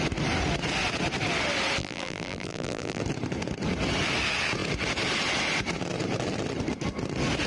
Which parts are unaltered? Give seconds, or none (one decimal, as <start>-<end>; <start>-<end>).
0.0-1.8; 3.0-7.5